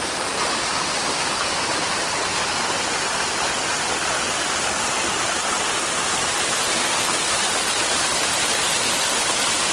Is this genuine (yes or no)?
yes